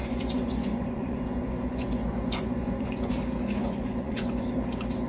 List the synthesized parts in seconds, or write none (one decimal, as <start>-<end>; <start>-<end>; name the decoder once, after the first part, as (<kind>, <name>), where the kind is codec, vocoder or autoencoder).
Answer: 0.0-3.1 (vocoder, Vocos); 3.6-4.5